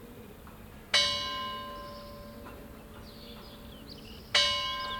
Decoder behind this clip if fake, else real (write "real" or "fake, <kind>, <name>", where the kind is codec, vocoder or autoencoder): real